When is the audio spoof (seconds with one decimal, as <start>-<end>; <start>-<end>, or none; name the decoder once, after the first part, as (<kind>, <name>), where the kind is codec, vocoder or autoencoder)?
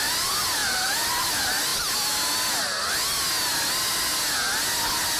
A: none